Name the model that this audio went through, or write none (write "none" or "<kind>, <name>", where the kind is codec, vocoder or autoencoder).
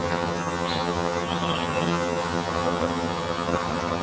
vocoder, HiFi-GAN